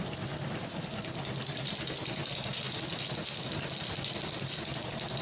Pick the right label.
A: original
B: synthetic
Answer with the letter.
A